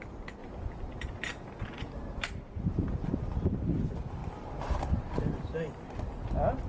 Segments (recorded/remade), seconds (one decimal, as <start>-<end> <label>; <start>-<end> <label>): 0.0-0.4 recorded; 0.4-3.6 remade; 3.6-4.2 recorded; 4.2-4.9 remade; 4.9-6.7 recorded